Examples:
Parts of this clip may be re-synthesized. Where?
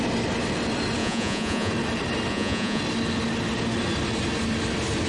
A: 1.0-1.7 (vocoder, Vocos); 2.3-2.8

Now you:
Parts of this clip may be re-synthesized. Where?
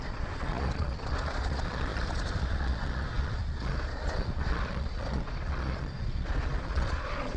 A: 0.0-7.4 (vocoder, Vocos)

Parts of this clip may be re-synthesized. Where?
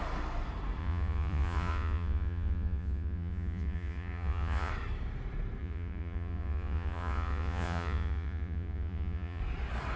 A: 0.8-4.7 (vocoder, Vocos); 5.6-9.4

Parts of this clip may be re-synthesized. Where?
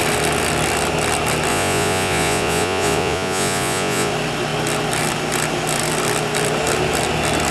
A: 1.5-4.1 (vocoder, Vocos)